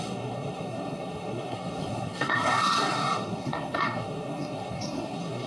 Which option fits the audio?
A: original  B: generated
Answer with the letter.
B